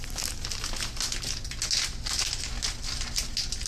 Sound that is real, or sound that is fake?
real